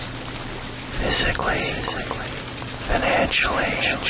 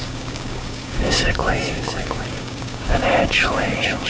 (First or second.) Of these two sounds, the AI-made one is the second